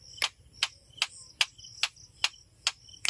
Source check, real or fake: real